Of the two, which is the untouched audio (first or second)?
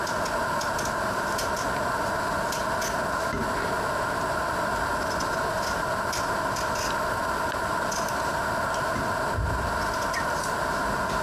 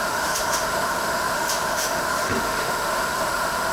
first